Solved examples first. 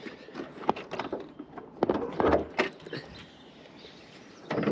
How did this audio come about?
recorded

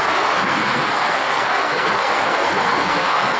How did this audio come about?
remade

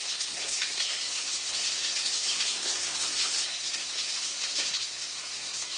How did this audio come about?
remade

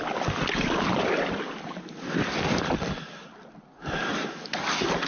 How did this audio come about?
recorded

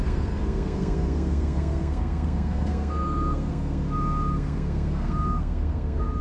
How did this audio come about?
remade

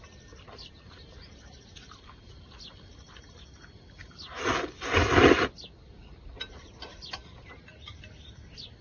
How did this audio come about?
recorded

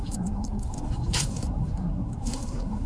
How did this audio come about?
remade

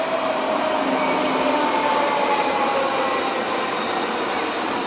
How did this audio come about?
recorded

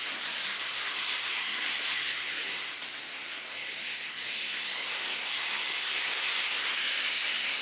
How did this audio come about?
remade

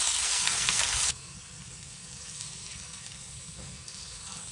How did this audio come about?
remade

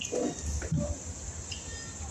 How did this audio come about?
recorded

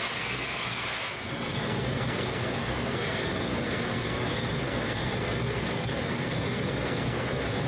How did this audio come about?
remade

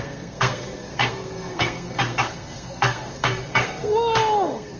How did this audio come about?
remade